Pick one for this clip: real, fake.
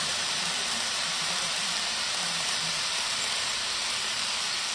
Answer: fake